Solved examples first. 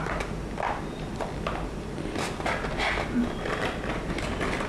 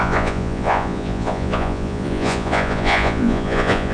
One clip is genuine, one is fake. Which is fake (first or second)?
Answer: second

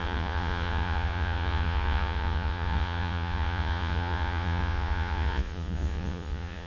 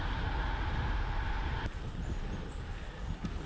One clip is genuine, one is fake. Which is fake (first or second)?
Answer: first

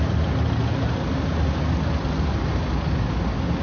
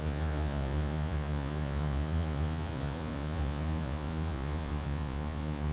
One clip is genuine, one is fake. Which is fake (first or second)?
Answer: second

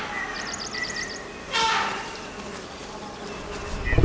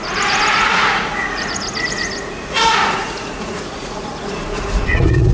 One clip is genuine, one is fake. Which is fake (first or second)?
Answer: second